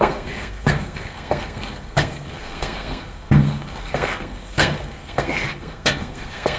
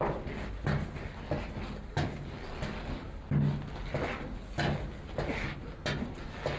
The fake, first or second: first